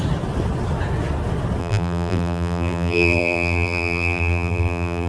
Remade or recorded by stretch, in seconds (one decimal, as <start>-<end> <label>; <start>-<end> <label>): 0.0-1.6 recorded; 1.6-5.1 remade

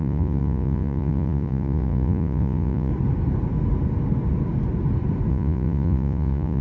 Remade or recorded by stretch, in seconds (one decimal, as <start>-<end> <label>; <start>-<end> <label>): 0.0-2.9 remade; 2.9-5.3 recorded; 5.3-6.6 remade

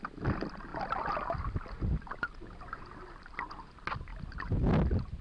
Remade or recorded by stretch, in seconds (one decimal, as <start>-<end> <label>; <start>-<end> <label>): 0.0-5.2 recorded

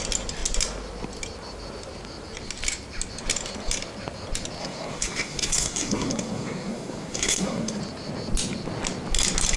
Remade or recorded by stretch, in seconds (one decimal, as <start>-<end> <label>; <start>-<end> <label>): 0.0-4.6 recorded; 4.6-7.8 remade; 7.8-9.6 recorded

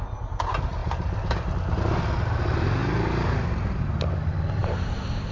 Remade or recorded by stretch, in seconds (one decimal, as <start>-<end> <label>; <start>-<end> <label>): 0.0-2.8 recorded; 2.8-3.9 remade; 3.9-4.6 recorded; 4.6-5.3 remade

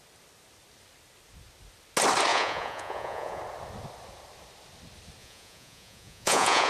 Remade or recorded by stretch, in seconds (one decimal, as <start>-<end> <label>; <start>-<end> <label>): 0.0-2.3 recorded; 2.3-3.4 remade; 3.4-5.2 recorded; 5.2-6.7 remade